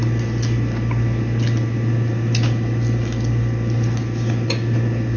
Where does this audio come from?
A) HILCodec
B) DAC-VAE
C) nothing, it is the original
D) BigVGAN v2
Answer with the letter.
C